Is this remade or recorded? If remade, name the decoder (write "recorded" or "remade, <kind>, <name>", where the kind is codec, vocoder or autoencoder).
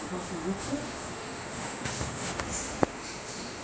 remade, autoencoder, DAC-VAE